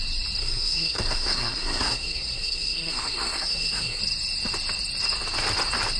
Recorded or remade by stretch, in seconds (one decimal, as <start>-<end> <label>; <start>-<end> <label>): 0.0-0.4 recorded; 0.4-4.0 remade; 4.0-6.0 recorded